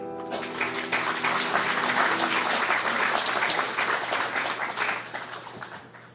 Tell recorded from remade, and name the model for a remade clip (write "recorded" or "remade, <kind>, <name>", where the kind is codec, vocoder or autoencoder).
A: recorded